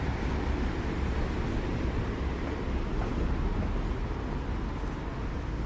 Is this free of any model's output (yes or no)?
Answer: yes